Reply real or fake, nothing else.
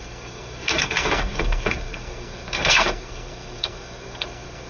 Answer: fake